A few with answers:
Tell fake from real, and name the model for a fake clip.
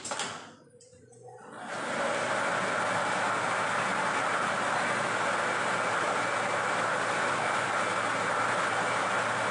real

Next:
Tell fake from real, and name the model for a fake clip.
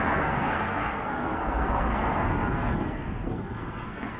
fake, codec, SNAC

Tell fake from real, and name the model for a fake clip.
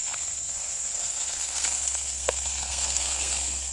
fake, codec, SNAC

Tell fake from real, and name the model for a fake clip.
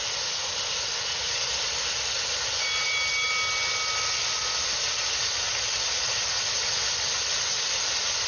real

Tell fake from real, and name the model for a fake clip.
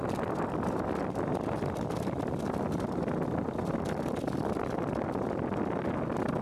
real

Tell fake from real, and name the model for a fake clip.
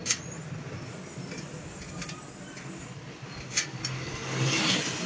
real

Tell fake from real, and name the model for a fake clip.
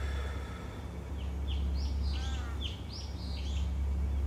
real